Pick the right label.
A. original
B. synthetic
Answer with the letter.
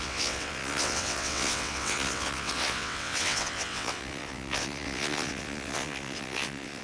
B